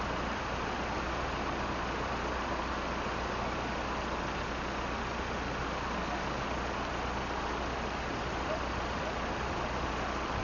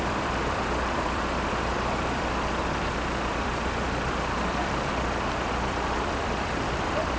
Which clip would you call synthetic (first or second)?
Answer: second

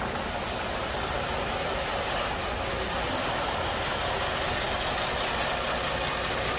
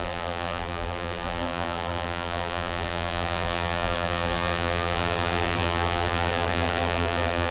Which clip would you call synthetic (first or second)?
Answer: second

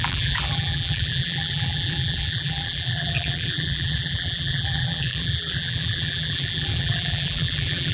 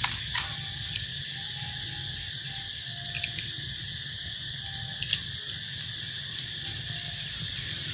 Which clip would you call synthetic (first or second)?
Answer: first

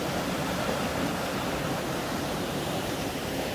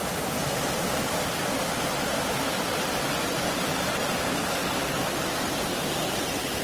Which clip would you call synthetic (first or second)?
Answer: first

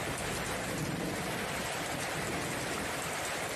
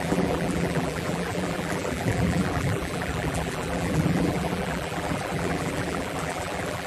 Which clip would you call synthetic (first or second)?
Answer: second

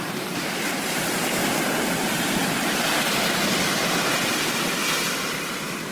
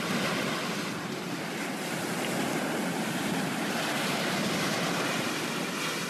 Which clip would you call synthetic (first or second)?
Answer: first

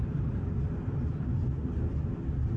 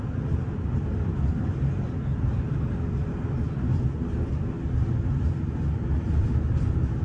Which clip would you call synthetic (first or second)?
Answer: first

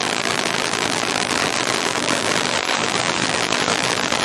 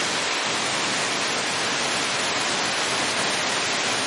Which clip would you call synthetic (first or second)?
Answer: first